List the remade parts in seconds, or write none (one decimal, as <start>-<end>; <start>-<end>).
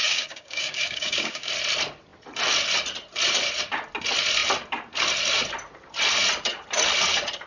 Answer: 0.0-1.5